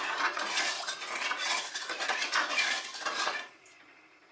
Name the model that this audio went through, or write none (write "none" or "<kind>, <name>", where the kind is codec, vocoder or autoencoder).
vocoder, Vocos